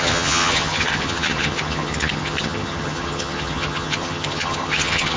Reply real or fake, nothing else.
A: fake